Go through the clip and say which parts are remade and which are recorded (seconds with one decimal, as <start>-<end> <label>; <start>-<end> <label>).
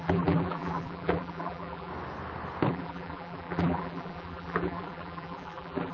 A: 0.0-1.9 remade; 1.9-2.7 recorded; 2.7-5.9 remade